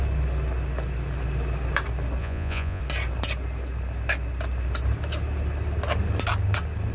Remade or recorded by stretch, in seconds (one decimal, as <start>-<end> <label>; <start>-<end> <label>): 0.0-2.2 recorded; 2.2-2.8 remade; 2.8-6.9 recorded